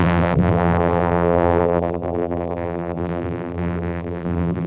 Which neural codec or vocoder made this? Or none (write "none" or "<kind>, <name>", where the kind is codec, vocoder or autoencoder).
vocoder, BigVGAN v2